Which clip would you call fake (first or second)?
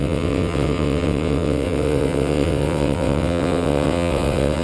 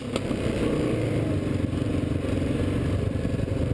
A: first